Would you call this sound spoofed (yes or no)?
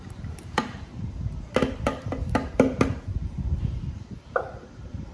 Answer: yes